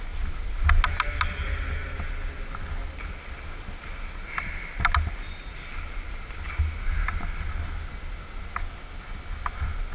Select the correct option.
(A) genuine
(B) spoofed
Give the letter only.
A